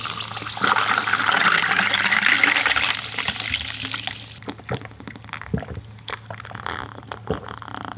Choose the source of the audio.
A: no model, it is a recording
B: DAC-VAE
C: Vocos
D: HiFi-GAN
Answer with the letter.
A